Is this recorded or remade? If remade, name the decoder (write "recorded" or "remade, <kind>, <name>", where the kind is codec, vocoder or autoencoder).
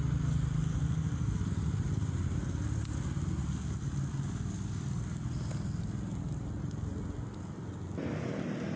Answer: recorded